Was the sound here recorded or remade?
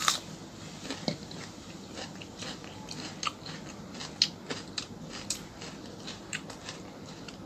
recorded